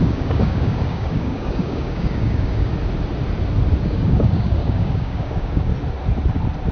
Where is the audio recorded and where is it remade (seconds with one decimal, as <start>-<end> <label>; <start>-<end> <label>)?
0.0-2.7 remade; 2.7-3.8 recorded; 3.8-5.7 remade; 5.7-6.7 recorded